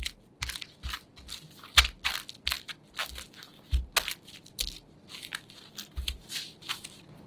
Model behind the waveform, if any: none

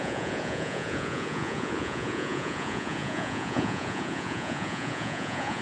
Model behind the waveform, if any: vocoder, Vocos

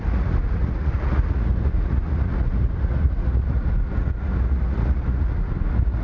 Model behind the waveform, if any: vocoder, Vocos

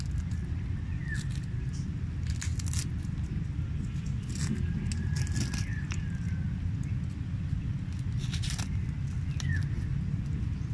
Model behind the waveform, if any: none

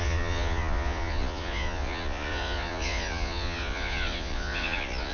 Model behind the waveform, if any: vocoder, Vocos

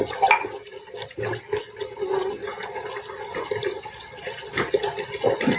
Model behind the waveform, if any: none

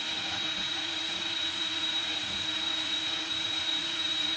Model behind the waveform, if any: vocoder, Vocos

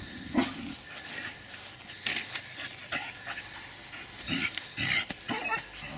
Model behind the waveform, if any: none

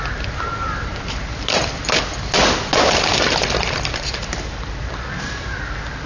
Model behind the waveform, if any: none